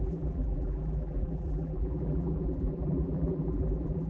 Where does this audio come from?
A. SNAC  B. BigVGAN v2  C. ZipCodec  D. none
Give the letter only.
B